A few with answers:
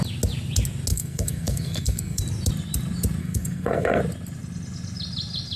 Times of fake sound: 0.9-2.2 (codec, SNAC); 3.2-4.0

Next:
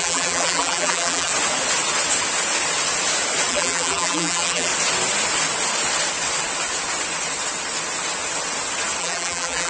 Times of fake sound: 0.0-1.3 (vocoder, BigVGAN v2); 3.5-4.7; 9.0-9.7

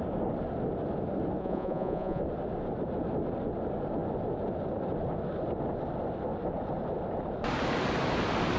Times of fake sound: 1.4-2.2 (vocoder, Vocos)

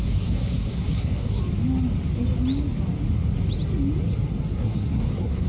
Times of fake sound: 0.0-1.4 (codec, SNAC); 4.5-5.5

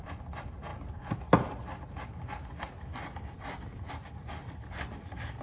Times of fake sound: none

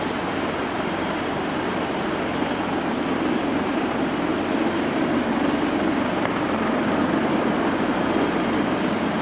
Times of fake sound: 0.0-4.3 (vocoder, BigVGAN v2); 6.7-9.2